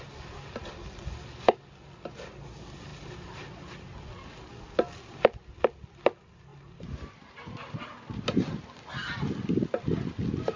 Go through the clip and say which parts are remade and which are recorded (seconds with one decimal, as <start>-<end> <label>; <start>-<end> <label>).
0.0-6.5 recorded; 6.5-8.6 remade; 8.6-10.6 recorded